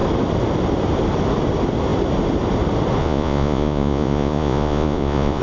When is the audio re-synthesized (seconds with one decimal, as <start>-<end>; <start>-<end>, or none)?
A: 3.0-5.4